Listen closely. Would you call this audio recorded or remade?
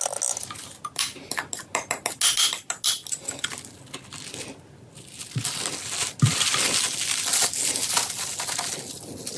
recorded